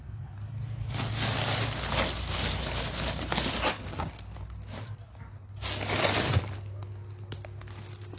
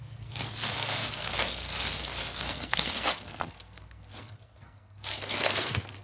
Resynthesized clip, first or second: second